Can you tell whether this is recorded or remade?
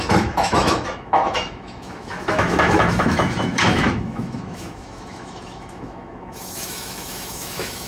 remade